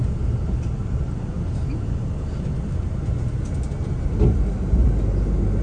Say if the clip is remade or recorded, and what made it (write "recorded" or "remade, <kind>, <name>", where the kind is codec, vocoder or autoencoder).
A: recorded